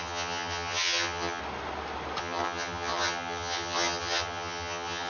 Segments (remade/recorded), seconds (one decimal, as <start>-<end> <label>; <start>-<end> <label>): 0.0-1.4 remade; 1.4-2.2 recorded; 2.2-5.1 remade